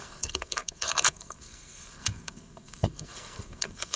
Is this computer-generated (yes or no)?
yes